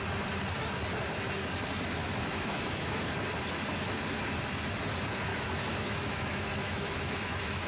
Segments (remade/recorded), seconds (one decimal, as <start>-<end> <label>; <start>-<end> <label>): 0.0-2.0 recorded; 2.0-3.0 remade; 3.0-5.3 recorded; 5.3-7.7 remade